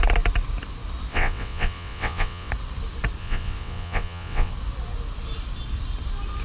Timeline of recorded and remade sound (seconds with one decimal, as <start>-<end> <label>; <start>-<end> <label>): 0.0-1.1 recorded; 1.1-2.5 remade; 2.5-3.2 recorded; 3.2-4.5 remade; 4.5-6.4 recorded